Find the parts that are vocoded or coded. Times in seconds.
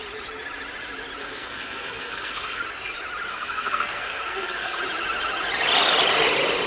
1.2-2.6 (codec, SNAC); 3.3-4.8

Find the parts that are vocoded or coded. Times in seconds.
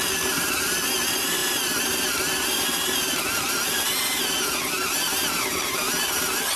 none